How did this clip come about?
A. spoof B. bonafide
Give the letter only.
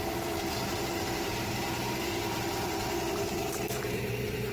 A